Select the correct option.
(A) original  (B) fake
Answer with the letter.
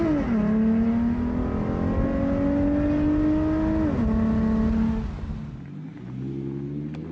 A